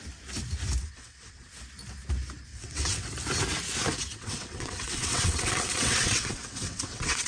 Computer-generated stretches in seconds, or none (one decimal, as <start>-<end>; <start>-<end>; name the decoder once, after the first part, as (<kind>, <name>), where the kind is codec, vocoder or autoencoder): 0.8-1.5 (vocoder, WaveNeXt); 2.5-3.1; 4.1-7.3